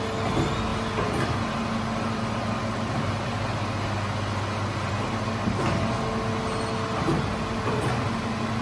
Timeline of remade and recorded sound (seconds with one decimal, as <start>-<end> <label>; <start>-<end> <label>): 0.0-8.6 recorded